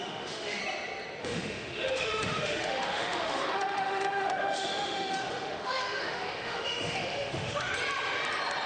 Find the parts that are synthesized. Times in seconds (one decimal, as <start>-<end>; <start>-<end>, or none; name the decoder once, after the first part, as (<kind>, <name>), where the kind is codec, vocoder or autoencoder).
0.0-0.6 (autoencoder, DAC-VAE); 1.2-7.7